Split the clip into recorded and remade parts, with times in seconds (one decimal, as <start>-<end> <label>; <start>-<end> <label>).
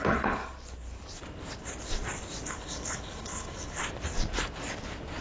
0.0-0.4 remade; 0.4-2.5 recorded; 2.5-3.8 remade; 3.8-5.2 recorded